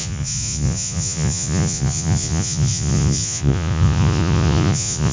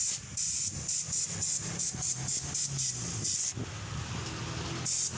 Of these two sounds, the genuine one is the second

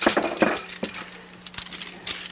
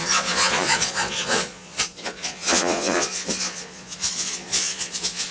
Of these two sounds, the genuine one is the first